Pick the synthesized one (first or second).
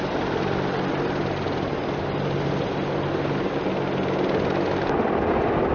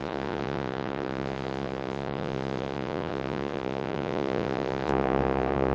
second